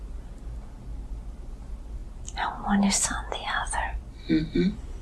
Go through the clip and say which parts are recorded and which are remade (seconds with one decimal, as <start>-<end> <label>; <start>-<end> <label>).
0.0-5.0 recorded